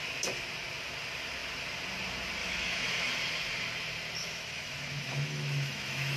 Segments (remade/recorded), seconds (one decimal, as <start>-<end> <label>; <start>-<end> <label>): 0.0-2.4 recorded; 2.4-3.1 remade; 3.1-4.2 recorded; 4.2-6.2 remade